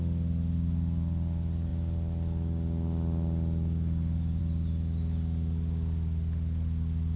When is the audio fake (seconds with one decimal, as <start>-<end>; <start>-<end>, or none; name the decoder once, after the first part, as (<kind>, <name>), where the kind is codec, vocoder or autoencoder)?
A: none